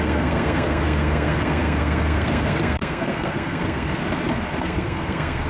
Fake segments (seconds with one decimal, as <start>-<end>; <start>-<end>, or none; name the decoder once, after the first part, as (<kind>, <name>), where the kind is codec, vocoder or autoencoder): 0.0-4.0 (codec, SNAC); 4.6-5.5